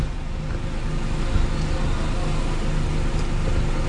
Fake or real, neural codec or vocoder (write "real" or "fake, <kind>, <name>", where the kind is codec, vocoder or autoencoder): real